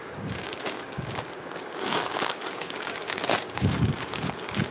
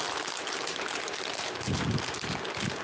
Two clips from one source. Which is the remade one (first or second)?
first